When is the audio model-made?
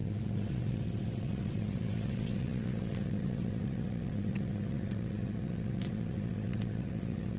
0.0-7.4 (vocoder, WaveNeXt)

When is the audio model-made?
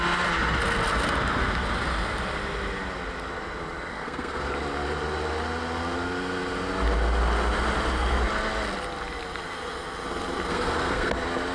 3.9-4.5 (codec, SNAC); 10.5-11.1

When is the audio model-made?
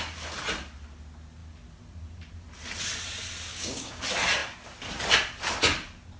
3.5-4.0 (codec, DAC)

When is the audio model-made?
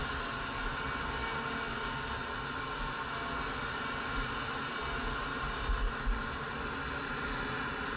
none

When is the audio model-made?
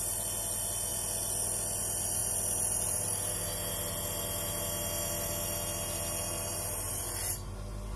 none